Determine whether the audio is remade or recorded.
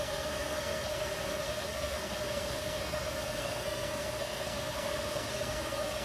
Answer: remade